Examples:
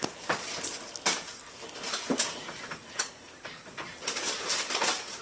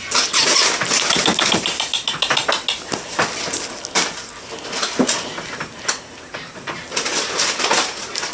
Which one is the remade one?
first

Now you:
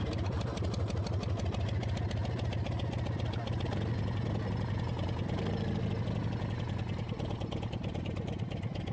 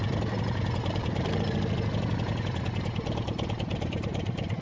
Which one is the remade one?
second